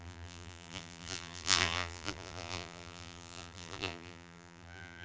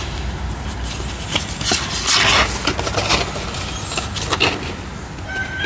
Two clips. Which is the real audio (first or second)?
second